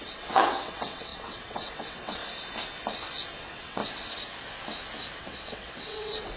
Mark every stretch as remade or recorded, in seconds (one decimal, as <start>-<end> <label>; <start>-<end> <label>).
0.0-2.2 remade; 2.2-3.4 recorded; 3.4-3.8 remade; 3.8-5.2 recorded; 5.2-6.4 remade